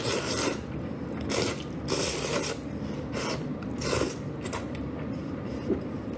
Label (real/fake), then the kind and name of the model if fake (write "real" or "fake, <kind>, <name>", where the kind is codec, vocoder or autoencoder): fake, vocoder, BigVGAN v2